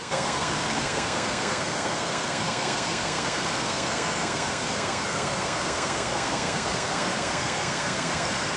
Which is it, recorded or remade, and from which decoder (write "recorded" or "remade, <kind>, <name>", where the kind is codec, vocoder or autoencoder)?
remade, codec, SNAC